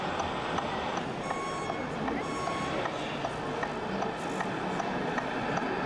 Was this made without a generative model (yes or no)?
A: yes